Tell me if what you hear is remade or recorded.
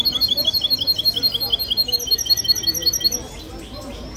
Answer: recorded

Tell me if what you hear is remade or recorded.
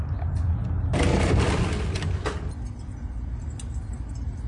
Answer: recorded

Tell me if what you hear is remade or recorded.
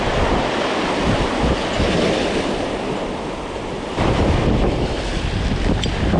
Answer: recorded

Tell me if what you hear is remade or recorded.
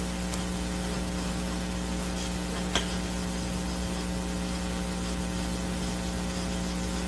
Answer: recorded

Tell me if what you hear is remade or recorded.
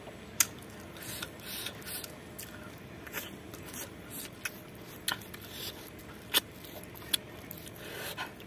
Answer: recorded